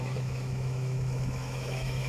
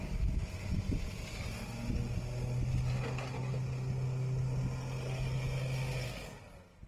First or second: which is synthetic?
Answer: first